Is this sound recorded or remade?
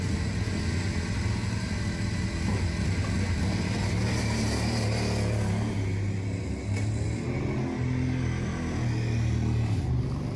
recorded